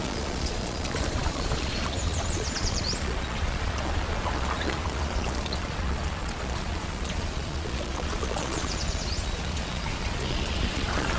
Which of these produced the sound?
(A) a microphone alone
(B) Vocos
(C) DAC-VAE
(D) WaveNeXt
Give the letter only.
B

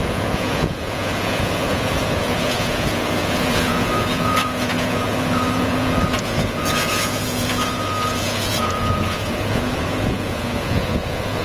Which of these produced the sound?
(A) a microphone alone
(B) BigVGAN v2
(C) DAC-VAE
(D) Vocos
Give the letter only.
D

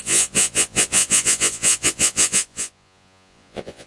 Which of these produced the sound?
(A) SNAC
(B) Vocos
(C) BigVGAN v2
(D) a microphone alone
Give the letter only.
B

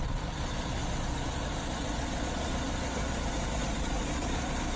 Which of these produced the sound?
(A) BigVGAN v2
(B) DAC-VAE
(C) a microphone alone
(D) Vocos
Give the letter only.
D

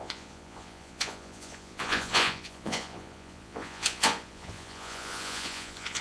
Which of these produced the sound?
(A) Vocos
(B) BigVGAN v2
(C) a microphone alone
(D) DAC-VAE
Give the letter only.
A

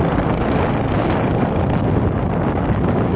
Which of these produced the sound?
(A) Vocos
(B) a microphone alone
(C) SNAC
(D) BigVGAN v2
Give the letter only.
B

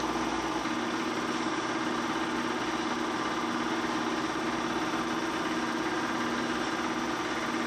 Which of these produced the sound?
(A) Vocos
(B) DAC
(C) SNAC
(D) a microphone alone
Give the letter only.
D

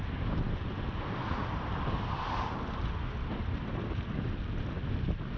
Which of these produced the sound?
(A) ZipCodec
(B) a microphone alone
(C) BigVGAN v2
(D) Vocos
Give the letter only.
B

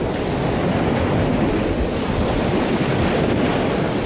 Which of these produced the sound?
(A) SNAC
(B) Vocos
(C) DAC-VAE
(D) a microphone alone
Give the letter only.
D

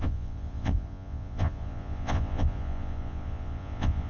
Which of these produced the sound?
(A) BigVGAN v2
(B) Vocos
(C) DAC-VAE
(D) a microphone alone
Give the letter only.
B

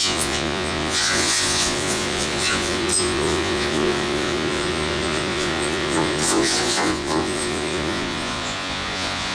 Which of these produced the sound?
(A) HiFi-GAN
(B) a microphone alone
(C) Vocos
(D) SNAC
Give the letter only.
C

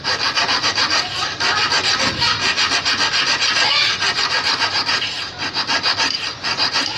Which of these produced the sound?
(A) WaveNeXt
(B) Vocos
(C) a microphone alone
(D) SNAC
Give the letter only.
C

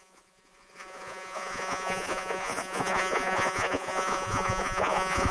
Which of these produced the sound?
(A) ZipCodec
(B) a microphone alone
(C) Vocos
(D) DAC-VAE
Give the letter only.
C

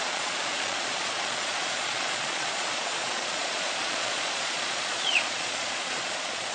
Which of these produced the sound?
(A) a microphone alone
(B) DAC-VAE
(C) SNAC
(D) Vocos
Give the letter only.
D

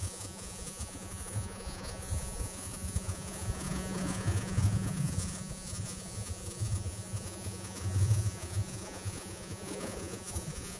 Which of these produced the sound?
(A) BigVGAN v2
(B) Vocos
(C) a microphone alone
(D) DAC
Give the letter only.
B